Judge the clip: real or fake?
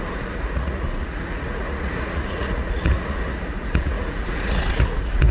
fake